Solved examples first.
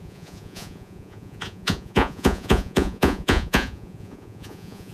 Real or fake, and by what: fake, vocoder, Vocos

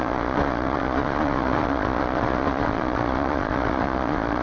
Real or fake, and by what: fake, vocoder, Vocos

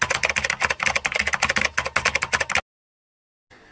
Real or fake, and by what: real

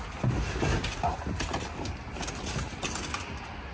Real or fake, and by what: real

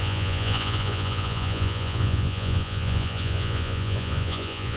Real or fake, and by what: fake, vocoder, Vocos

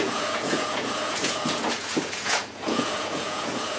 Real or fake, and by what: fake, vocoder, Vocos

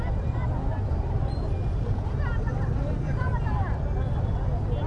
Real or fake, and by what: real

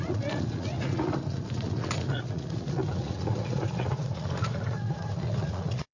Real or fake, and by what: fake, vocoder, Vocos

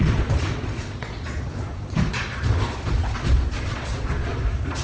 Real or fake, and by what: fake, vocoder, Vocos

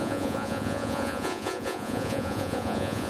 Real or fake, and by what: fake, vocoder, Vocos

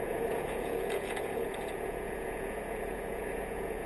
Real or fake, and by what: fake, vocoder, Vocos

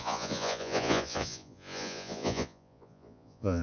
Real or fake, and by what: fake, vocoder, Vocos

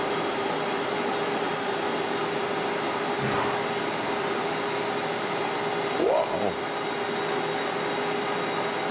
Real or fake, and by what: real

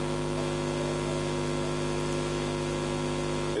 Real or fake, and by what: real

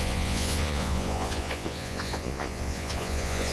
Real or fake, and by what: fake, vocoder, Vocos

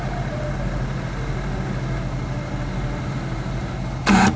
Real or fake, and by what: real